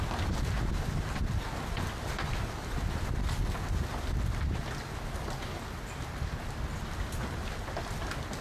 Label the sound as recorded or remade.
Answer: recorded